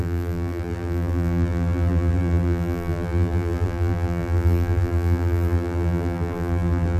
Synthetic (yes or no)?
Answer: yes